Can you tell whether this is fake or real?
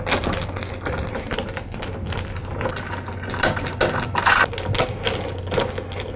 real